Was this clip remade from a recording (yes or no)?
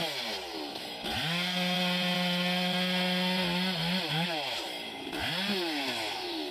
no